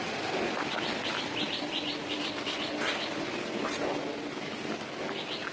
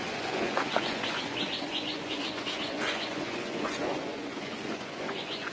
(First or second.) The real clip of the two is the first